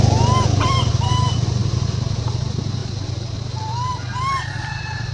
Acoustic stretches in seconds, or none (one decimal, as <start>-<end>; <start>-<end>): 0.0-5.1